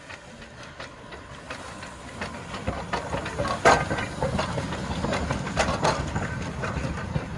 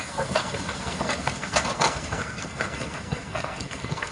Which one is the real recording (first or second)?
first